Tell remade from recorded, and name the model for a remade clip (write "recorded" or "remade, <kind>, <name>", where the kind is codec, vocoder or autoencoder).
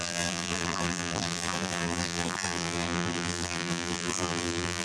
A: remade, vocoder, BigVGAN v2